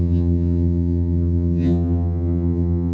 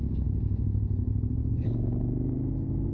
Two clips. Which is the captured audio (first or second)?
second